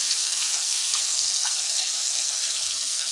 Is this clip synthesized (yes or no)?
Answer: yes